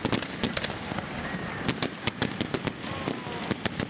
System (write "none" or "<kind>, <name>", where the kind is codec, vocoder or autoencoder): none